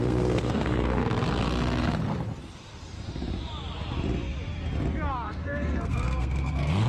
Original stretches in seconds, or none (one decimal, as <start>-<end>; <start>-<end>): 1.0-5.1

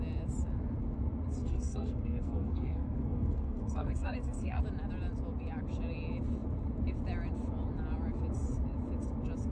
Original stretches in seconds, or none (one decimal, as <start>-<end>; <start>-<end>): 0.0-1.4; 4.6-9.5

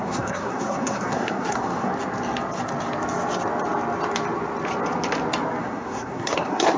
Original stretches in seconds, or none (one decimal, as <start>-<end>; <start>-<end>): 1.9-5.6

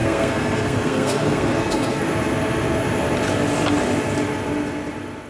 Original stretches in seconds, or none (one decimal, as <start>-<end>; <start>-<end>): 2.1-5.3

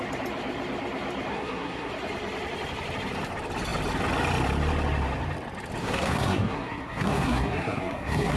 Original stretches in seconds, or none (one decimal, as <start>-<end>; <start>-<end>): 0.0-1.3; 1.9-5.8

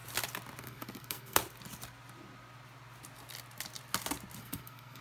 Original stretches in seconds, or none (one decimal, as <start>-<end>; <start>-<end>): 0.0-0.6; 1.4-4.4

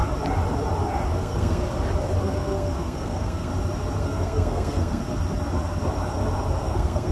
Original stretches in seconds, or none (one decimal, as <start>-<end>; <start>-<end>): 0.0-1.1; 1.6-2.2; 3.5-4.0; 5.0-6.6

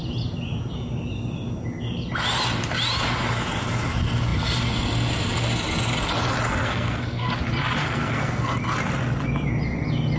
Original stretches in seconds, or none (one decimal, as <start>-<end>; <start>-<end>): 0.0-6.5; 7.3-7.8; 8.5-10.2